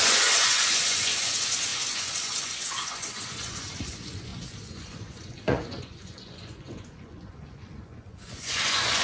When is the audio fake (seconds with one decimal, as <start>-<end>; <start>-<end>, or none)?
0.0-9.0